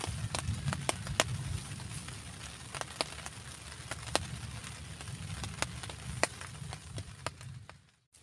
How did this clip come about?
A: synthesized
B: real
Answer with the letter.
B